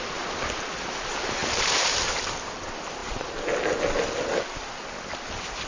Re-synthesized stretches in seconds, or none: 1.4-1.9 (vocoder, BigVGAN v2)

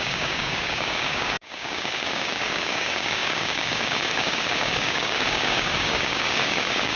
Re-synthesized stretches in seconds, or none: 0.0-7.0 (codec, DAC)

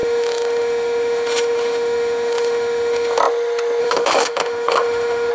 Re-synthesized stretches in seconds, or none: 0.0-3.2 (autoencoder, DAC-VAE); 3.8-5.3

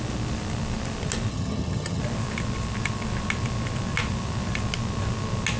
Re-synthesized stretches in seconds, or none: 1.3-2.0 (vocoder, HiFi-GAN)

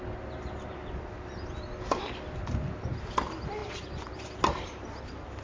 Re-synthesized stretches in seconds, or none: none

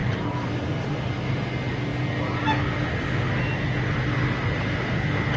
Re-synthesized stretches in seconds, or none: 0.0-1.4 (vocoder, BigVGAN v2)